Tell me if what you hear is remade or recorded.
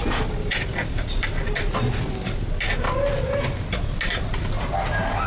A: recorded